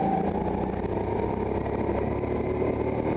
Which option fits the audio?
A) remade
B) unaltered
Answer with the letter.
B